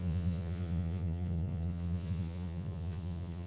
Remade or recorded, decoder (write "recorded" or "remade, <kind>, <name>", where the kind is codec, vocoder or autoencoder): remade, vocoder, Vocos